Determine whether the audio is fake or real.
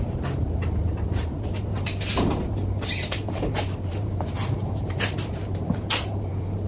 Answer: fake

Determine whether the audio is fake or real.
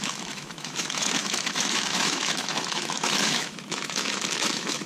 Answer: fake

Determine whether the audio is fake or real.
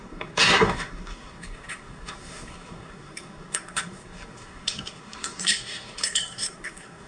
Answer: fake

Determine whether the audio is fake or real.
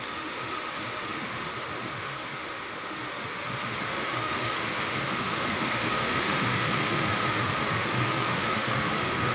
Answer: fake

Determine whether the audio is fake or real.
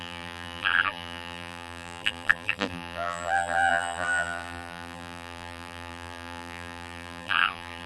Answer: fake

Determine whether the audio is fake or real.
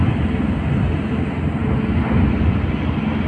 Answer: real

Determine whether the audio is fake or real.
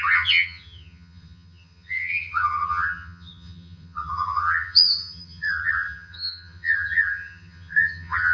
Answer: fake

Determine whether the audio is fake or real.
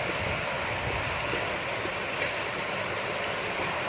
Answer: fake